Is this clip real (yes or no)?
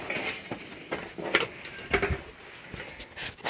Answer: yes